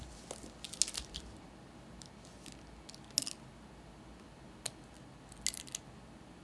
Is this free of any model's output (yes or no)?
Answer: yes